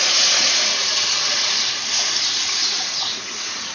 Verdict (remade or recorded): remade